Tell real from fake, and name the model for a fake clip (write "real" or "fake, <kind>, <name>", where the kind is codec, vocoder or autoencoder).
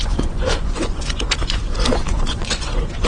fake, vocoder, Vocos